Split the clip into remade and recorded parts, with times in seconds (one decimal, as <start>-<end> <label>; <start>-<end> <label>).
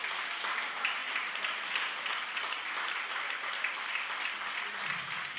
0.0-0.6 remade; 0.6-1.0 recorded; 1.0-4.2 remade; 4.2-5.4 recorded